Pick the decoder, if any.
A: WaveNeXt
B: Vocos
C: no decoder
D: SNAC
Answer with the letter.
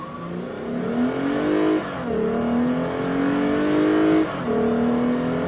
C